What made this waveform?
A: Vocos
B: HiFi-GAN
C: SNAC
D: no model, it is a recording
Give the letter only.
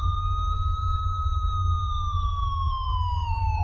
C